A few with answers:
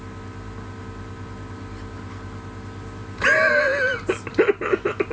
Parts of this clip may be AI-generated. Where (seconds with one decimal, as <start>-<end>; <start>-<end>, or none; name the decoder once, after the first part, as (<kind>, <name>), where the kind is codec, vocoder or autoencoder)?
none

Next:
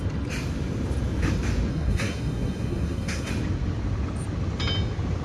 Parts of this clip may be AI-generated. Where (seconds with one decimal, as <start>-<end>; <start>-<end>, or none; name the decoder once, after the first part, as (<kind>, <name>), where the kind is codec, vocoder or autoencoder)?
1.7-3.3 (codec, SNAC)

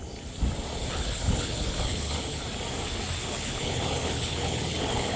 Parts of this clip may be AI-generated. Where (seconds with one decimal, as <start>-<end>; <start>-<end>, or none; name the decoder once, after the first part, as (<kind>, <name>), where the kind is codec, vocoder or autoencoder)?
0.8-2.4 (codec, HILCodec); 3.2-5.2